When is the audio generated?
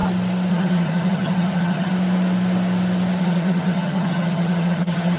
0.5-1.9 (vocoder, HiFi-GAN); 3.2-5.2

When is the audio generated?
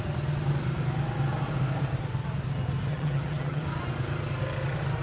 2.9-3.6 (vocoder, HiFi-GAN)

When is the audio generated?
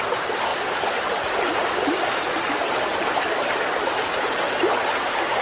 none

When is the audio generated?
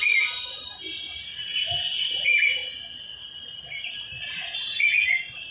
none